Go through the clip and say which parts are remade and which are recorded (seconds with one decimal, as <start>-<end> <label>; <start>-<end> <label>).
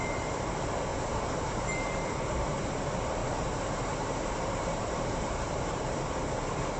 0.0-0.5 remade; 0.5-0.9 recorded; 0.9-2.6 remade; 2.6-3.2 recorded; 3.2-6.0 remade; 6.0-6.8 recorded